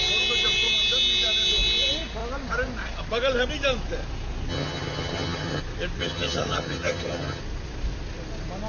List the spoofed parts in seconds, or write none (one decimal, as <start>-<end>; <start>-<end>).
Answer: 4.5-5.6; 6.0-7.4